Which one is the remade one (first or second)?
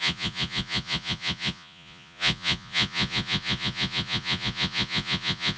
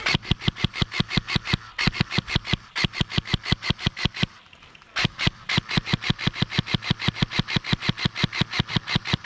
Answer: first